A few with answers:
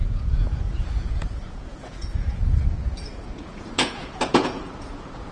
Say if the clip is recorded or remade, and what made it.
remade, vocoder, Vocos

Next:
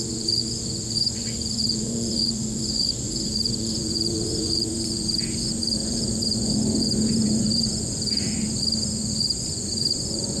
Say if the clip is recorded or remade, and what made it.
remade, vocoder, Vocos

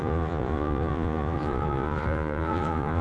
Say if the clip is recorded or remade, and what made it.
remade, vocoder, Vocos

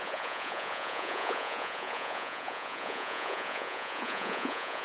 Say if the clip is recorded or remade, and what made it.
remade, vocoder, Vocos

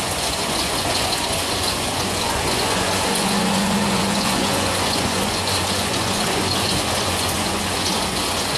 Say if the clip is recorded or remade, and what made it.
remade, vocoder, Vocos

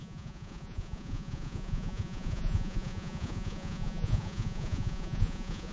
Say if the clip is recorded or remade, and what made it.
remade, vocoder, Vocos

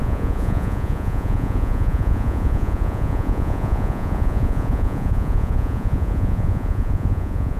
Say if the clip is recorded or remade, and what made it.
remade, vocoder, Vocos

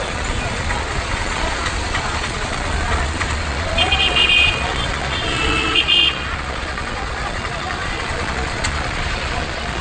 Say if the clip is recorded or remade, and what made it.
remade, vocoder, Vocos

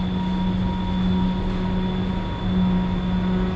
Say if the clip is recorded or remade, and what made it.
recorded